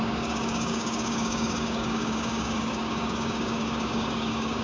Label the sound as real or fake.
fake